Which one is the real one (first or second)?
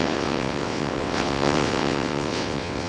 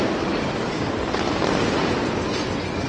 second